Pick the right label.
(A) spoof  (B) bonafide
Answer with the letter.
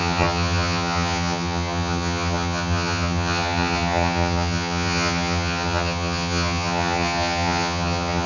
A